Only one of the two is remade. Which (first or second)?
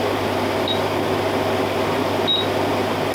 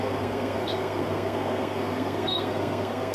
second